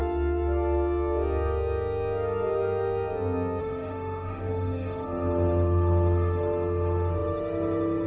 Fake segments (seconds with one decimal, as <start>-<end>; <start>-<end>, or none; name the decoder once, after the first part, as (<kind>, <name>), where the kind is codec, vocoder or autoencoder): 3.6-8.1 (autoencoder, DAC-VAE)